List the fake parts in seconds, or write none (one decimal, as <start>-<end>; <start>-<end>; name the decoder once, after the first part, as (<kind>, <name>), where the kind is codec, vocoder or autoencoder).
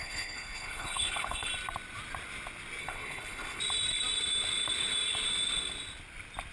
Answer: 0.0-1.5 (codec, HILCodec); 2.8-3.6